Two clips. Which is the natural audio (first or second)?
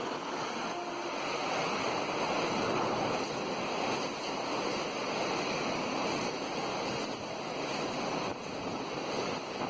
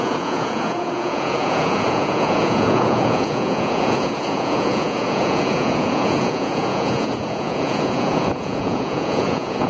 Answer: first